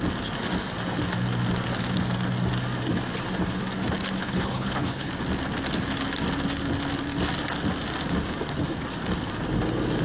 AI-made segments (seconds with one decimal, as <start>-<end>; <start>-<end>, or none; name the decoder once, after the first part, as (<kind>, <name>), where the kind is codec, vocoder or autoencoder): 4.2-5.1 (codec, HILCodec)